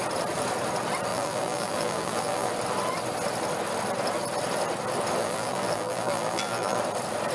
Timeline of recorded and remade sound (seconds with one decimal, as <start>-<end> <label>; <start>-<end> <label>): 0.0-1.1 recorded; 1.1-2.5 remade; 2.5-5.2 recorded; 5.2-6.8 remade; 6.8-7.3 recorded